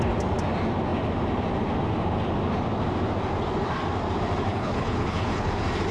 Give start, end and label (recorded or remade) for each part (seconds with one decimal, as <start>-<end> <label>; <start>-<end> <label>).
0.0-4.5 recorded; 4.5-5.5 remade; 5.5-5.9 recorded